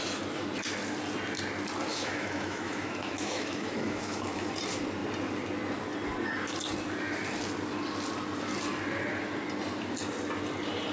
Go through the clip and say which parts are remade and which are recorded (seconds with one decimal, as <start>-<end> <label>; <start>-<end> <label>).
0.0-1.9 recorded; 1.9-4.5 remade; 4.5-10.9 recorded